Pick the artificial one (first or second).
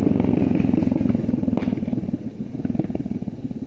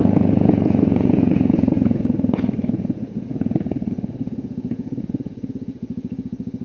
second